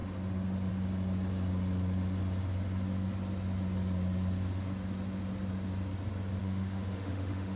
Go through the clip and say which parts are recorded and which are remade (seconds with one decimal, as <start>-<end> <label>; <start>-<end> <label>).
0.0-6.4 recorded; 6.4-7.6 remade